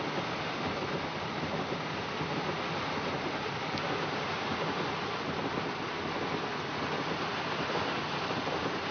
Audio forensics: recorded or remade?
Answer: recorded